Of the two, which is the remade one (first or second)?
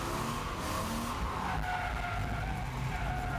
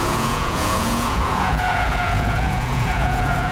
second